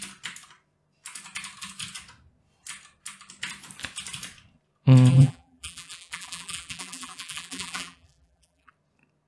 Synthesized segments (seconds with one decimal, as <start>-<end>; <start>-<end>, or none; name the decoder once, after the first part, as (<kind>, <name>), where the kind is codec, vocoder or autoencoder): 5.1-8.7 (vocoder, BigVGAN v2)